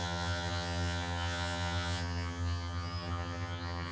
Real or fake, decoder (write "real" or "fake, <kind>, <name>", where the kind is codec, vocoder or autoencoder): fake, vocoder, HiFi-GAN